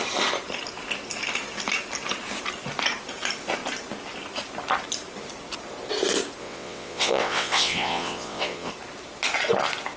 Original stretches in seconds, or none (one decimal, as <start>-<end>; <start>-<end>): 0.0-6.4; 8.7-10.0